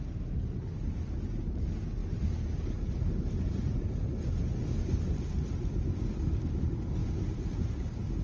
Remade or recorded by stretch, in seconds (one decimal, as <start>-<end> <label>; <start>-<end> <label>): 0.0-8.2 recorded